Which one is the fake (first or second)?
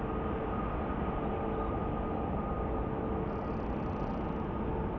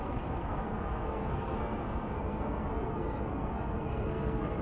second